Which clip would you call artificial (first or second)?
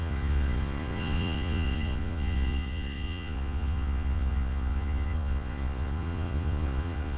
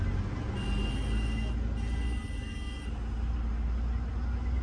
first